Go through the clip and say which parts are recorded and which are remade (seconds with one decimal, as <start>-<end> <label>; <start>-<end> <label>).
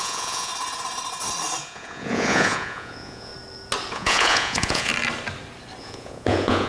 0.0-0.5 remade; 0.5-1.6 recorded; 1.6-3.3 remade; 3.3-3.9 recorded; 3.9-4.9 remade; 4.9-5.8 recorded; 5.8-6.7 remade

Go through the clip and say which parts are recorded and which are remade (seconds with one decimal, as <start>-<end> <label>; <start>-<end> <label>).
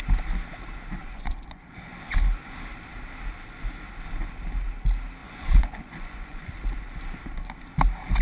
0.0-1.0 recorded; 1.0-2.2 remade; 2.2-5.2 recorded; 5.2-6.5 remade; 6.5-8.2 recorded